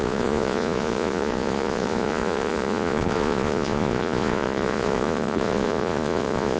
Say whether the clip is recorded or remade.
remade